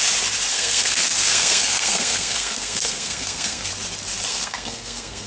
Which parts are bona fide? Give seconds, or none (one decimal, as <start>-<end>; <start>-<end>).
0.0-0.5; 3.7-4.3